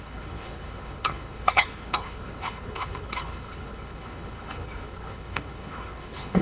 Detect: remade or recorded remade